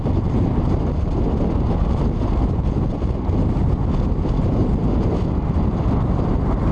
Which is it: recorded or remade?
recorded